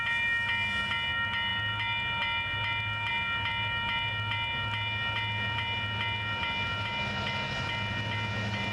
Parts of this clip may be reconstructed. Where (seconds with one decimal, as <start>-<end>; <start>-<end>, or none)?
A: none